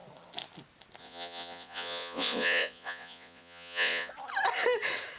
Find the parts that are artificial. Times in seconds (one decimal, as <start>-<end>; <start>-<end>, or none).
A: 1.0-4.1